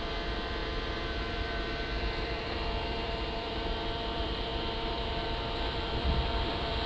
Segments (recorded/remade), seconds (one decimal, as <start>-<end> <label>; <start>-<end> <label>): 0.0-6.9 remade